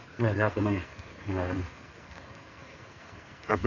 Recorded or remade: remade